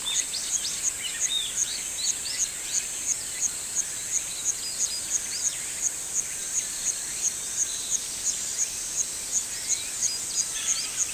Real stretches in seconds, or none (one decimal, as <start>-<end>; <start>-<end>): 0.0-6.4; 8.7-11.1